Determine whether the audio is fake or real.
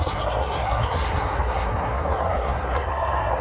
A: fake